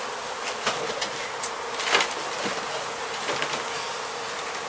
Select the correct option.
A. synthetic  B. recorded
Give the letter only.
B